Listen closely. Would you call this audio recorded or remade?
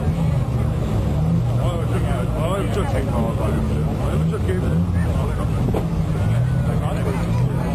recorded